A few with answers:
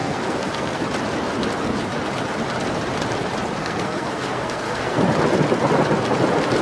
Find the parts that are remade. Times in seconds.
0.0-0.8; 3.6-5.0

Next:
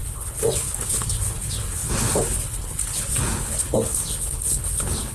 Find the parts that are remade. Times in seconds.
0.0-5.1